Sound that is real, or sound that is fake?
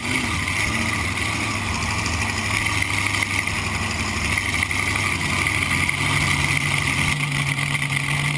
real